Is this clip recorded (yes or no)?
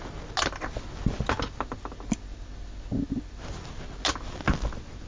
yes